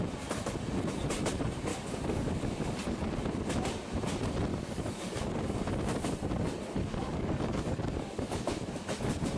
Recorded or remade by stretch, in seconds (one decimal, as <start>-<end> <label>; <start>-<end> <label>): 0.0-1.7 recorded; 1.7-3.1 remade; 3.1-4.5 recorded; 4.5-5.3 remade; 5.3-6.8 recorded; 6.8-9.0 remade; 9.0-9.4 recorded

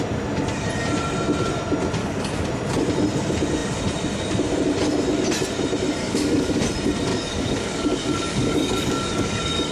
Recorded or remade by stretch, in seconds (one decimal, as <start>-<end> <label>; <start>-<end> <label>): 0.0-2.0 recorded; 2.0-2.5 remade; 2.5-6.0 recorded; 6.0-6.6 remade; 6.6-7.1 recorded; 7.1-9.7 remade

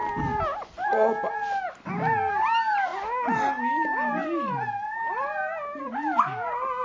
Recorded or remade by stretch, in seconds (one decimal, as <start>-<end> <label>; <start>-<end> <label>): 0.0-6.8 recorded

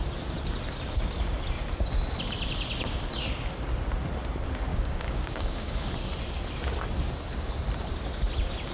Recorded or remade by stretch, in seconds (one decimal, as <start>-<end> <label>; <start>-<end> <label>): 0.0-4.7 recorded; 4.7-5.9 remade; 5.9-8.7 recorded

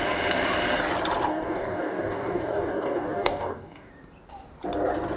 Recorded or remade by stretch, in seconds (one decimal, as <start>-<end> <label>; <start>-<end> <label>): 0.0-1.3 recorded; 1.3-3.9 remade; 3.9-5.2 recorded